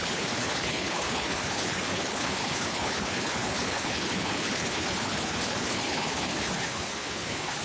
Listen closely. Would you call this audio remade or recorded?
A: remade